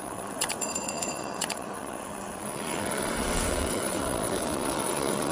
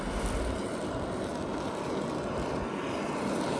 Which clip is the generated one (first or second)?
first